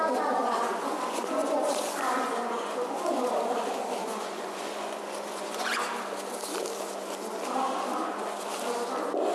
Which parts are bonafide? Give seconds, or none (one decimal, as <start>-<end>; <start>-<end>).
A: 0.0-0.4; 3.3-4.0; 5.8-8.0; 8.5-9.3